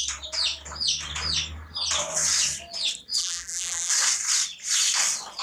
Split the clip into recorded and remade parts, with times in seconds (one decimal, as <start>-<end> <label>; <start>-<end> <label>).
0.0-3.2 recorded; 3.2-3.9 remade; 3.9-5.4 recorded